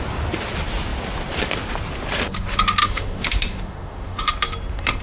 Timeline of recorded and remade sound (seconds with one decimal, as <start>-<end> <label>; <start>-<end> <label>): 0.0-2.8 recorded; 2.8-4.2 remade; 4.2-5.0 recorded